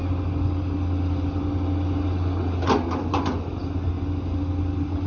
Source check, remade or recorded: recorded